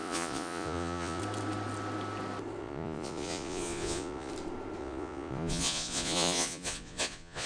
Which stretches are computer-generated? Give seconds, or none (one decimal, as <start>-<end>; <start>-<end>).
0.0-1.2; 2.6-4.3; 4.8-7.5